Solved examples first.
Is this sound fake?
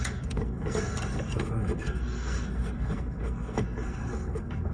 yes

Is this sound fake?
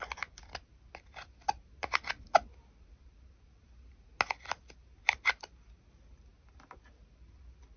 no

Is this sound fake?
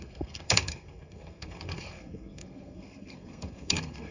yes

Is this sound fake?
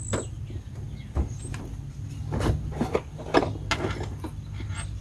no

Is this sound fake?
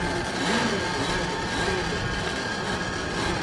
no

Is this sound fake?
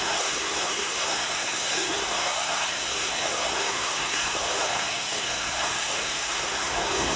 yes